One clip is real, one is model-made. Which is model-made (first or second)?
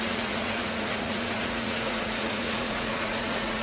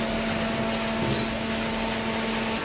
first